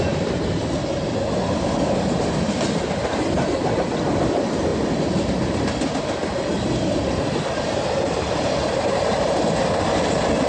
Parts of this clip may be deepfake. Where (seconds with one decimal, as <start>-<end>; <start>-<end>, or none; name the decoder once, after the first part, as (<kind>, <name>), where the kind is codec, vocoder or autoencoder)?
none